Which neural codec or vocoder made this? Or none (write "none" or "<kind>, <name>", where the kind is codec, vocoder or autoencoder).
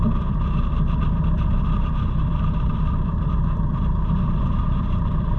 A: vocoder, BigVGAN v2